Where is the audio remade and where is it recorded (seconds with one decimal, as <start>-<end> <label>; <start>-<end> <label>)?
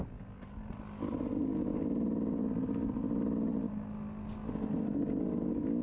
0.0-5.8 recorded